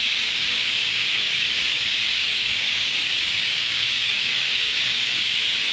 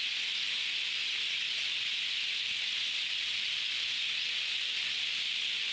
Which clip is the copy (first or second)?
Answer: first